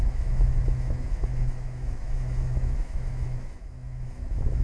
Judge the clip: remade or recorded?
remade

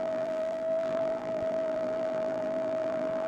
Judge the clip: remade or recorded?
remade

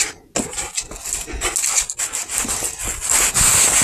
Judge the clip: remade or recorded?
recorded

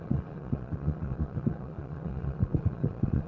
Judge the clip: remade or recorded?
remade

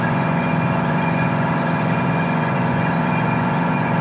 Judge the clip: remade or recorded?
remade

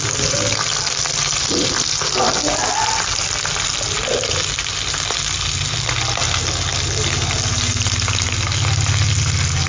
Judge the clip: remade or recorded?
recorded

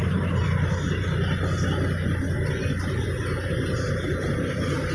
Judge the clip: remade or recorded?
recorded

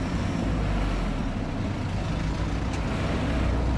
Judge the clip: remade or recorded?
recorded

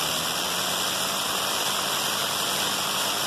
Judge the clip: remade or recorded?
recorded